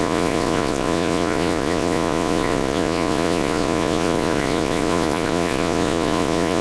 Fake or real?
fake